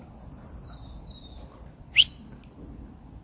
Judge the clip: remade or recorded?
recorded